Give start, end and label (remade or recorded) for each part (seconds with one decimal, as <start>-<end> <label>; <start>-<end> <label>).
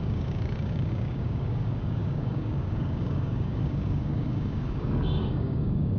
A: 0.0-6.0 remade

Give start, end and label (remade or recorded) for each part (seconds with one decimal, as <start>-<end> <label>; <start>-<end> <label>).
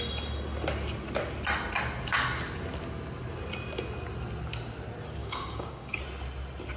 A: 0.0-5.2 recorded; 5.2-6.0 remade; 6.0-6.8 recorded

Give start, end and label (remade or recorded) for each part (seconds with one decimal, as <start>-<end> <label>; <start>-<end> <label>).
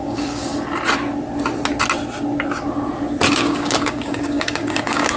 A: 0.0-0.5 remade; 0.5-3.3 recorded; 3.3-5.2 remade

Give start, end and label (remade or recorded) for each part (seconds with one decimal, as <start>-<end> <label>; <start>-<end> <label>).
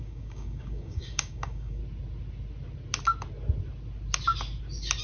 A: 0.0-1.8 remade; 1.8-5.0 recorded